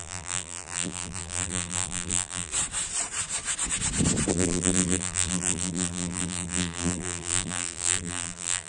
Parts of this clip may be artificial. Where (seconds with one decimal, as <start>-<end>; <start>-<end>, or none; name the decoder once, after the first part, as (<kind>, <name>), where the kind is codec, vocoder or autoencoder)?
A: 0.0-2.5 (vocoder, BigVGAN v2); 4.3-8.7